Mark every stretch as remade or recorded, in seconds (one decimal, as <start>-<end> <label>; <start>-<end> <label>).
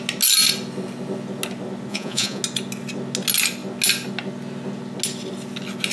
0.0-1.9 recorded; 1.9-2.4 remade; 2.4-5.9 recorded